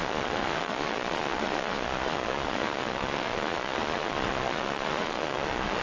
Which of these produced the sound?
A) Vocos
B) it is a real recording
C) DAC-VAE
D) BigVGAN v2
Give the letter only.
A